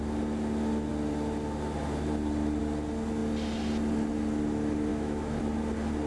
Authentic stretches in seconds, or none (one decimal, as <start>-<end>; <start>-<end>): 0.0-4.9; 5.4-6.1